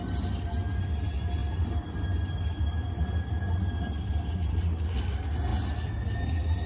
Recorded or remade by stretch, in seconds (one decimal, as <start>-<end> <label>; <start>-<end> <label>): 0.0-6.7 recorded